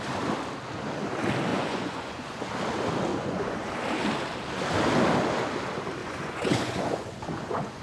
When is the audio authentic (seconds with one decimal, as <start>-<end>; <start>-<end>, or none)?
0.0-1.5; 2.5-3.1; 3.7-6.0